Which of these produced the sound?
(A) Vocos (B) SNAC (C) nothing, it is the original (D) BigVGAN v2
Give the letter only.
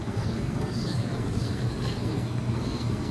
B